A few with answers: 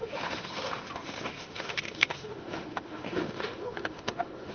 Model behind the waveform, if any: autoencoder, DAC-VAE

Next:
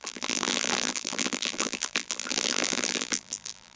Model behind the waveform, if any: vocoder, BigVGAN v2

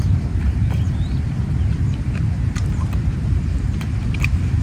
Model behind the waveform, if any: vocoder, BigVGAN v2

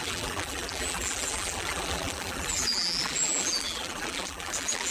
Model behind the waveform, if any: vocoder, BigVGAN v2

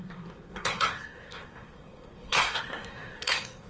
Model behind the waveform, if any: codec, SNAC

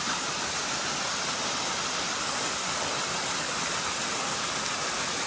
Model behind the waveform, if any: none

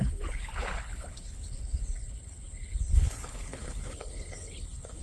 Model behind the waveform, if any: codec, HILCodec